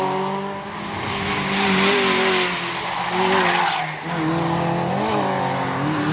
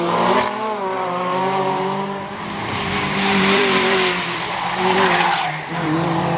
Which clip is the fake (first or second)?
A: second